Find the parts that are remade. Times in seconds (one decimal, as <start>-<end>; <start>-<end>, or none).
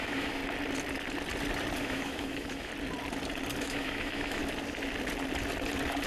0.0-0.4; 1.8-2.7; 3.6-4.4